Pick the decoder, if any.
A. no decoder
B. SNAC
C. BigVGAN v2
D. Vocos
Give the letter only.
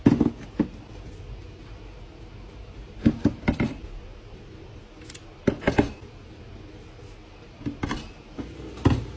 A